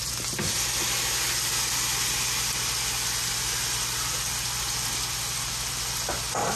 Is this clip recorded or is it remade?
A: recorded